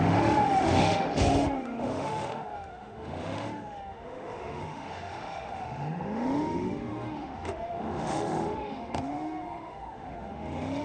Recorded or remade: remade